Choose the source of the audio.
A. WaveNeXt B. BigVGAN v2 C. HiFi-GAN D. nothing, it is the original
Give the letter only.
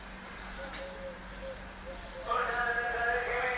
D